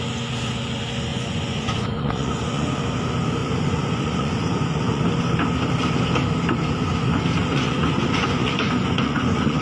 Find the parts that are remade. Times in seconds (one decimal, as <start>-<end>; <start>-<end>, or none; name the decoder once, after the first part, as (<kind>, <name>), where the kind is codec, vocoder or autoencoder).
1.1-2.8 (vocoder, Vocos); 3.4-5.0; 7.4-9.6